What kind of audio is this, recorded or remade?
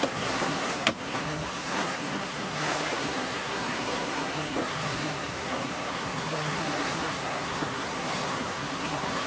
remade